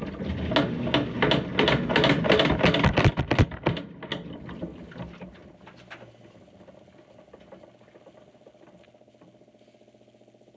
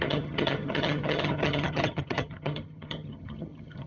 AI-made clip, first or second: second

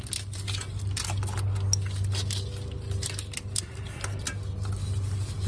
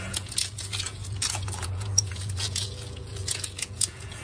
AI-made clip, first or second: second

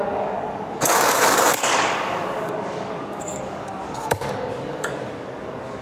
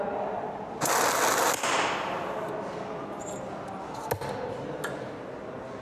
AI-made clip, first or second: first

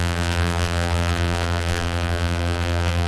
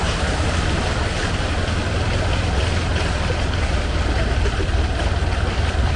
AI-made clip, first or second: first